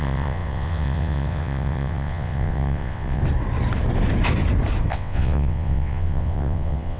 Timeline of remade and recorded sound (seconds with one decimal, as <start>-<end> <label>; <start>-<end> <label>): 0.0-3.2 remade; 3.2-4.9 recorded; 4.9-7.0 remade